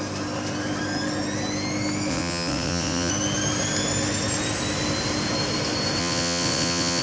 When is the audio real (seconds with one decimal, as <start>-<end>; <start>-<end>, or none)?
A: 0.0-2.1; 3.1-6.0